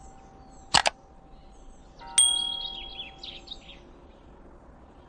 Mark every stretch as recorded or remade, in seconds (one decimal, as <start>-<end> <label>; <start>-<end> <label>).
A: 0.0-5.1 recorded